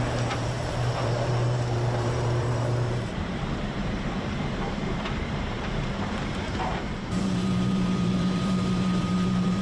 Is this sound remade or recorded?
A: remade